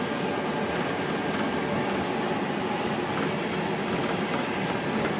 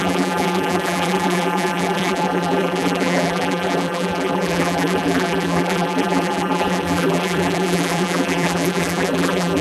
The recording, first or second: first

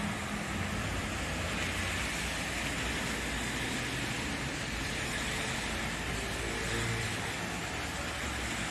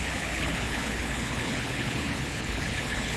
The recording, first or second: first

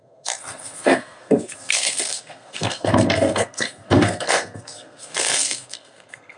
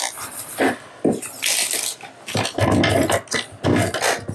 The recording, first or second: second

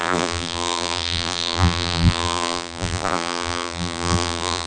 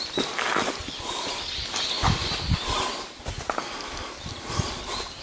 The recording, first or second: second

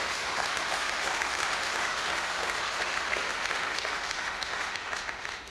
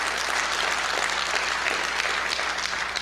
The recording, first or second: second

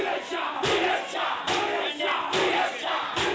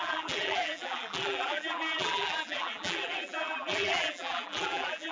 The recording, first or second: first